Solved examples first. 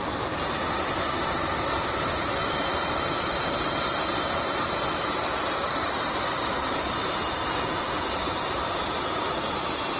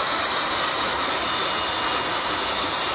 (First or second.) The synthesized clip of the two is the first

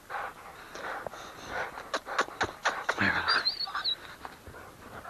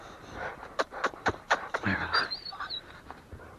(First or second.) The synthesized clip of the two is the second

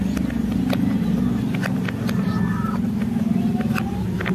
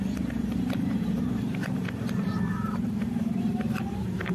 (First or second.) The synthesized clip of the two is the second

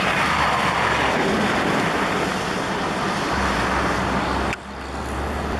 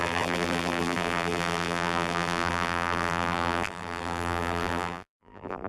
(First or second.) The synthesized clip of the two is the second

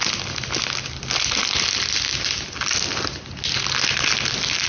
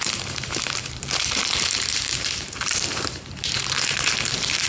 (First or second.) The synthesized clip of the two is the second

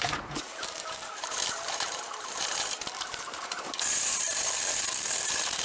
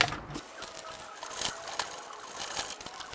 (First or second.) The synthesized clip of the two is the first